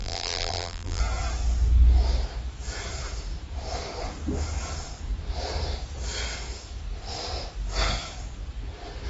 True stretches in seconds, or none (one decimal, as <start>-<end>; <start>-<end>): 1.0-9.1